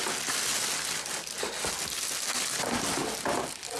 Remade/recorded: recorded